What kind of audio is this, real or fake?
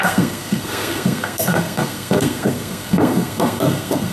fake